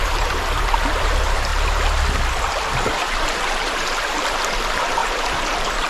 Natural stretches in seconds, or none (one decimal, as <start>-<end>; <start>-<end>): 1.5-3.0